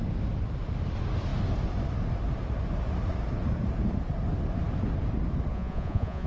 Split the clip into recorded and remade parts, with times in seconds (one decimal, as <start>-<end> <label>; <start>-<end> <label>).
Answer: 0.0-5.5 recorded; 5.5-6.3 remade